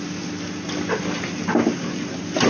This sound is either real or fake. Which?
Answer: real